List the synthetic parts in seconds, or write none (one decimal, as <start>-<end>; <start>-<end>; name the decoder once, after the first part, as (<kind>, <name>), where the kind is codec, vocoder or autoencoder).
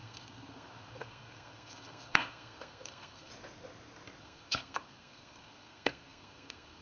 0.0-3.3 (codec, SNAC); 4.2-6.8